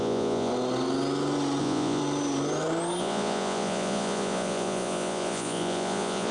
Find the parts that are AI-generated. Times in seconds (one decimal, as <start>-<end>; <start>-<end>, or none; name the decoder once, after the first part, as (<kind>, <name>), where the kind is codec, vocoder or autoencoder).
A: 0.0-0.5 (vocoder, Vocos); 1.6-2.0; 3.0-6.3